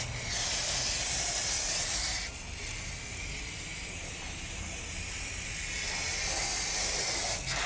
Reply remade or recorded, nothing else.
recorded